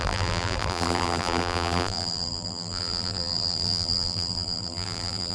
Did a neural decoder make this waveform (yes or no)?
yes